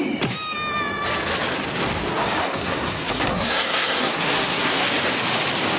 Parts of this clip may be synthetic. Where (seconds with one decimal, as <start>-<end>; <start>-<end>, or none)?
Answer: 2.4-4.8